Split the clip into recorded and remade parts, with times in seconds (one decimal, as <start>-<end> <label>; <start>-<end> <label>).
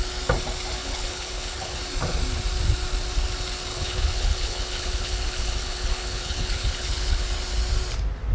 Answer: 0.0-0.8 recorded; 0.8-1.8 remade; 1.8-3.7 recorded; 3.7-7.3 remade; 7.3-8.3 recorded